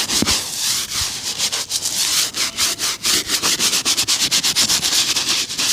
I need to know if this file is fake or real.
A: fake